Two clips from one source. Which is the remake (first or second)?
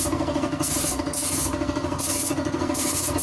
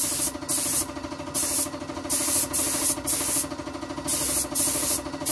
first